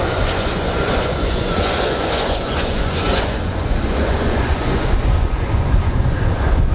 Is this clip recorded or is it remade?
remade